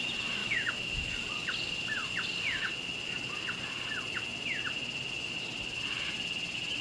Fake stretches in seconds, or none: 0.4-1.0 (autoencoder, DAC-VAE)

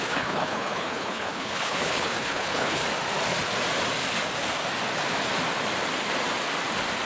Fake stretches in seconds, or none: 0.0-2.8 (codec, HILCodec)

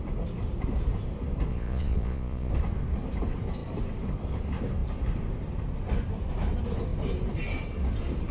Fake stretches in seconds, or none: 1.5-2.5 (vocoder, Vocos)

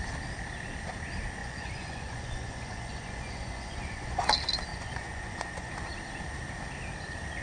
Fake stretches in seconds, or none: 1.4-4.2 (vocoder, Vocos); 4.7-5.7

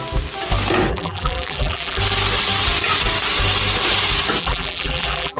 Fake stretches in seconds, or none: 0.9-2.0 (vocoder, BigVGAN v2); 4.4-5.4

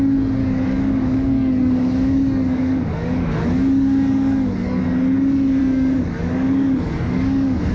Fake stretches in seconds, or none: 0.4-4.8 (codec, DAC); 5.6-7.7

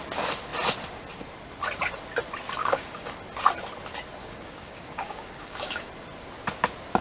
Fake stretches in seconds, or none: 2.6-3.2 (codec, DAC); 4.2-5.9